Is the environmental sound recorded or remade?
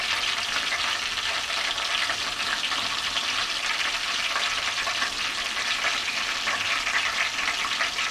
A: recorded